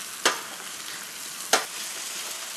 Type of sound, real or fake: real